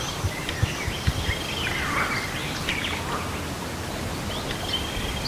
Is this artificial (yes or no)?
no